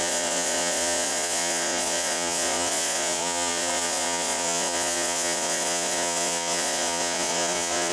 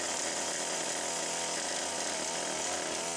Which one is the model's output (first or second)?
first